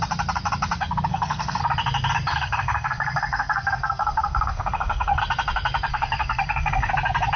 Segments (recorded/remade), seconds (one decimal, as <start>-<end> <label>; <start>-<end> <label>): 0.0-1.1 recorded; 1.1-1.6 remade; 1.6-2.3 recorded; 2.3-5.2 remade; 5.2-5.9 recorded; 5.9-6.9 remade; 6.9-7.4 recorded